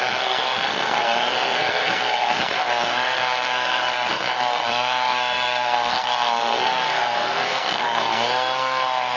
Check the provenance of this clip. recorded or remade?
remade